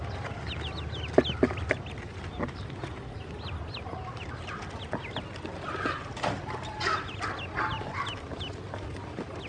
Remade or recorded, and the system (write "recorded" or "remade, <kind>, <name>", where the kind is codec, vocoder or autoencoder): recorded